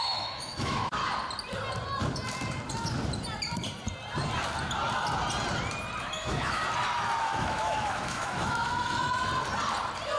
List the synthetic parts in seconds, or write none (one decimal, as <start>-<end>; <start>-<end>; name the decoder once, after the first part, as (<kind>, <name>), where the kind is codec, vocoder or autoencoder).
0.0-1.0 (autoencoder, DAC-VAE); 6.0-6.6; 7.2-9.3